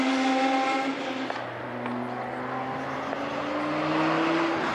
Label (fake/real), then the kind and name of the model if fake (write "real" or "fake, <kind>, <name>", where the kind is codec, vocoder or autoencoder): real